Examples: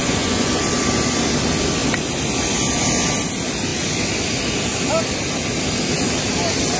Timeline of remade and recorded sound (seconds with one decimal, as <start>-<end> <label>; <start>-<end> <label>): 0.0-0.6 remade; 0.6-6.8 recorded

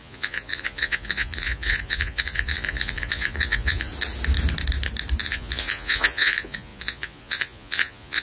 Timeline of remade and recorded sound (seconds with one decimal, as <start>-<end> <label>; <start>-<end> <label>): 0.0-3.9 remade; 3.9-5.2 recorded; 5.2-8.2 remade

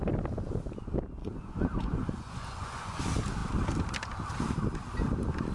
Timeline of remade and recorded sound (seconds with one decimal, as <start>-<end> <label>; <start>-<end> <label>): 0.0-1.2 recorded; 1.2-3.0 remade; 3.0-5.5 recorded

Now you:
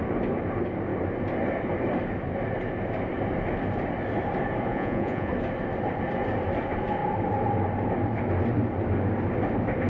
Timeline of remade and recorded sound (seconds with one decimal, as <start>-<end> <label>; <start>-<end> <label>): 0.0-4.7 recorded; 4.7-5.3 remade; 5.3-9.9 recorded

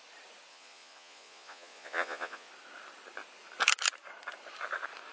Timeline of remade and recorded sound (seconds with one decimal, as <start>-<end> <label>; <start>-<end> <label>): 0.0-0.5 recorded; 0.5-2.5 remade; 2.5-5.1 recorded